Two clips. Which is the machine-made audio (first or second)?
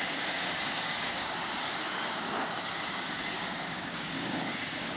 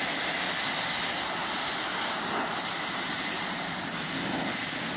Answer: first